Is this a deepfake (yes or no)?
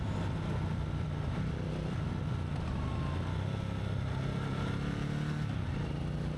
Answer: no